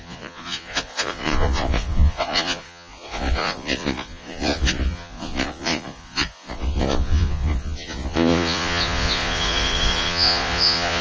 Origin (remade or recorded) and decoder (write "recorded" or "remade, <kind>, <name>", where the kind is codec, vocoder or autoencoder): remade, vocoder, Vocos